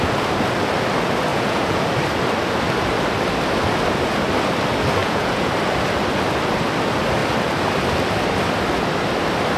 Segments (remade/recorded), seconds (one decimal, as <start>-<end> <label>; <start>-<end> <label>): 0.0-1.3 recorded; 1.3-1.8 remade; 1.8-5.0 recorded; 5.0-5.5 remade; 5.5-9.6 recorded